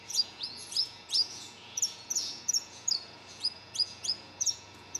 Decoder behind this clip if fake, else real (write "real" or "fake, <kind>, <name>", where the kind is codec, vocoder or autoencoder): fake, vocoder, Vocos